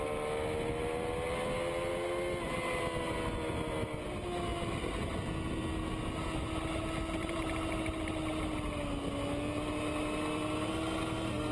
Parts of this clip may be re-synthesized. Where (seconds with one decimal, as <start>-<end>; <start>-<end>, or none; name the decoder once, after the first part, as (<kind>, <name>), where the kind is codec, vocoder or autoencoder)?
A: 7.2-7.7 (vocoder, BigVGAN v2)